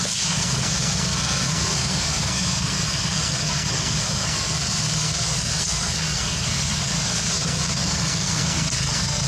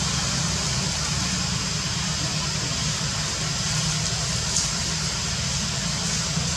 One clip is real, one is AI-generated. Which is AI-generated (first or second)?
first